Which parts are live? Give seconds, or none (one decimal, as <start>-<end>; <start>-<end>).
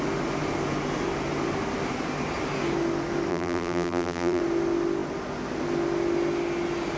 0.0-3.3; 4.4-7.0